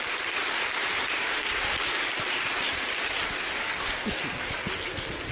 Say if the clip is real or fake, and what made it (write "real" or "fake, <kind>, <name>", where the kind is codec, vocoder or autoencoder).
real